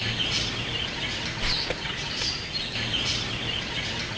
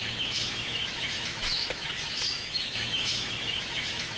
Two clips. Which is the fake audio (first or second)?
second